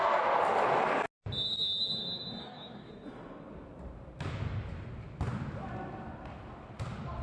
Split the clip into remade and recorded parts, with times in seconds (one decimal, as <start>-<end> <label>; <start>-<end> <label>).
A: 0.0-2.4 recorded; 2.4-2.9 remade; 2.9-7.2 recorded